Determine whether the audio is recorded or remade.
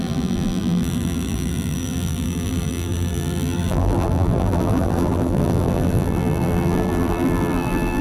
remade